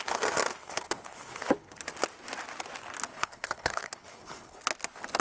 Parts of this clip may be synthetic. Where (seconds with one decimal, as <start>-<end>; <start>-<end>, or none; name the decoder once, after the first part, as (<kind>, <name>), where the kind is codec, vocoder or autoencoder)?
0.6-1.8 (codec, HILCodec); 3.1-4.6